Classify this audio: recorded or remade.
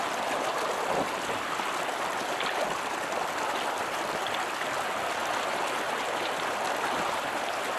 recorded